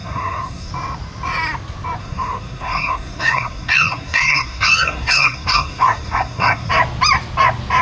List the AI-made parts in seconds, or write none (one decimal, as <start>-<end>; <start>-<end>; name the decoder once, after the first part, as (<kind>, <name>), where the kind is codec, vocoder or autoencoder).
0.0-0.7 (codec, SNAC); 2.0-6.7